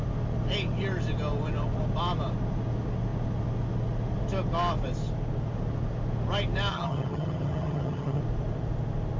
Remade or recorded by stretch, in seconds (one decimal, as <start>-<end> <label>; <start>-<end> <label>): 0.0-6.7 recorded; 6.7-8.2 remade; 8.2-9.2 recorded